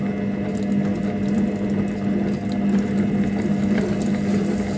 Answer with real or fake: real